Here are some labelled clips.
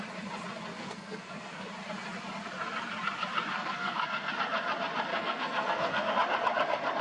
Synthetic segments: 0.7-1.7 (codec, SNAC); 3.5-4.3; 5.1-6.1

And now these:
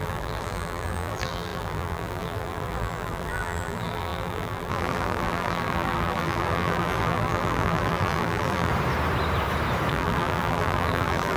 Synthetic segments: 0.0-8.7 (vocoder, BigVGAN v2); 9.9-11.4